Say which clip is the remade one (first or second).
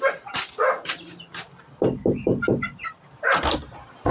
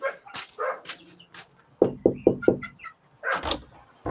first